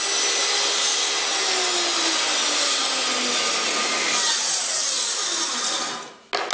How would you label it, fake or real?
real